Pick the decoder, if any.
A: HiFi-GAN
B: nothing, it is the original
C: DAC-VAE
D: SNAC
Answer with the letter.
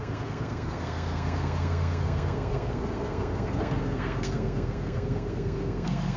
D